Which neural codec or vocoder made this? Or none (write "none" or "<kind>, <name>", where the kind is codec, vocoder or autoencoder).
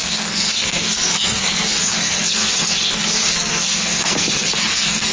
codec, SNAC